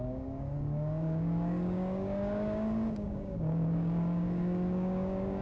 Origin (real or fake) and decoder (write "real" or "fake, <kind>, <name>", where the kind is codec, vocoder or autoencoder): fake, codec, DAC